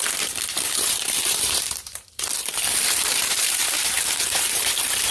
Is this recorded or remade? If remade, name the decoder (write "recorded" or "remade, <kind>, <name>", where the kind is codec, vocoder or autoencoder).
remade, vocoder, BigVGAN v2